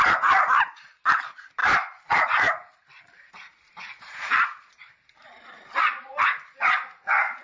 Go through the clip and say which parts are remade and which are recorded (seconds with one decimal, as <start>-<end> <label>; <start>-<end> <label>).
0.0-1.6 recorded; 1.6-4.0 remade; 4.0-5.9 recorded; 5.9-6.6 remade; 6.6-7.4 recorded

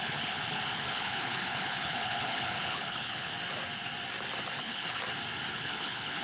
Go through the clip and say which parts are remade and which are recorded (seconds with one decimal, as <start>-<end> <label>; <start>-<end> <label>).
0.0-3.3 remade; 3.3-4.6 recorded; 4.6-5.0 remade; 5.0-5.5 recorded; 5.5-6.2 remade

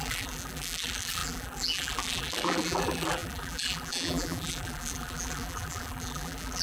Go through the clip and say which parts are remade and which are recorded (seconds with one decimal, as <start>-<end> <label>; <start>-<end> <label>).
0.0-6.6 remade